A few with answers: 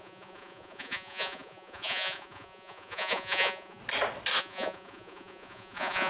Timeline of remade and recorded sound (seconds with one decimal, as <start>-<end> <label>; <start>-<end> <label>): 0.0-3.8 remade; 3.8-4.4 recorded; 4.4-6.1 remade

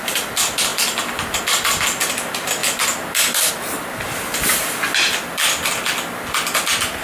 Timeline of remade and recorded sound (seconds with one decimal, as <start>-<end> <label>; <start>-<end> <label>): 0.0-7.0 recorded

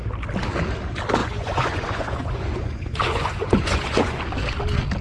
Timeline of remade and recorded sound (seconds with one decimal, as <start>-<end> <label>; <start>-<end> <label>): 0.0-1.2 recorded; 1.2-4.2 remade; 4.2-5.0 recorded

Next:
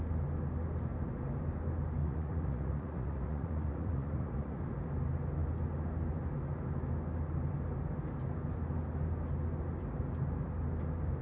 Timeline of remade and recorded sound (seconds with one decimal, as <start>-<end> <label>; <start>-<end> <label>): 0.0-2.0 recorded; 2.0-4.6 remade; 4.6-11.2 recorded

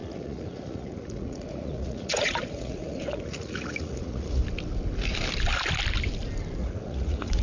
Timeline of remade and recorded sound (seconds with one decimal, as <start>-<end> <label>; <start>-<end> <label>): 0.0-4.4 remade; 4.4-6.6 recorded; 6.6-7.4 remade

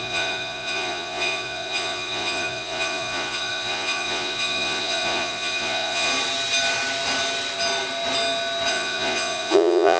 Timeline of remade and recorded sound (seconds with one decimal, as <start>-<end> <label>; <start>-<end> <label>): 0.0-6.1 remade; 6.1-8.7 recorded; 8.7-10.0 remade